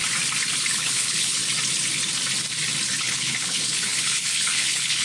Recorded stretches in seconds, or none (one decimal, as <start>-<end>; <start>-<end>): 0.0-0.6; 1.4-3.0

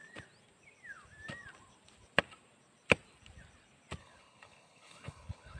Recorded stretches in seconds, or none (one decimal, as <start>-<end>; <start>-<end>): 0.0-4.0

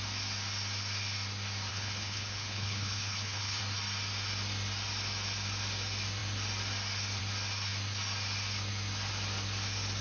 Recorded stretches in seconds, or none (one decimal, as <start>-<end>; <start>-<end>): 0.0-1.7; 3.6-10.0

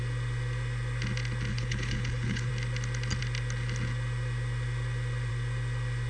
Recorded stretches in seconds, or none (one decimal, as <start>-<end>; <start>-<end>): 0.0-1.5; 2.5-6.1

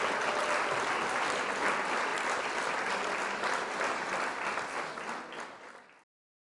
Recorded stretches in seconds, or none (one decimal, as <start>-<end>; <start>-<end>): 0.0-6.4